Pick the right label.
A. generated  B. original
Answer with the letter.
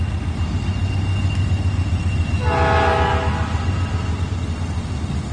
B